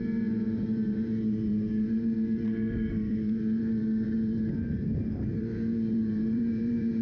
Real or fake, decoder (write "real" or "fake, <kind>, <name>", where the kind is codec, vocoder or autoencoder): fake, vocoder, BigVGAN v2